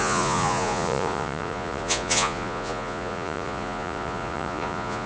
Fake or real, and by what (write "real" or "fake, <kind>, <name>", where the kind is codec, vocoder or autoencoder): fake, vocoder, Vocos